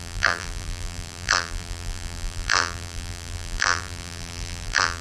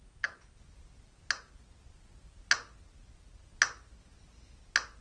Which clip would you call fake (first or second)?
first